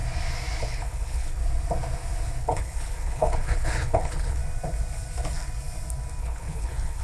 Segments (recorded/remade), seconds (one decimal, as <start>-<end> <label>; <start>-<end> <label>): 0.0-0.6 recorded; 0.6-1.4 remade; 1.4-2.4 recorded; 2.4-4.4 remade; 4.4-6.2 recorded; 6.2-7.0 remade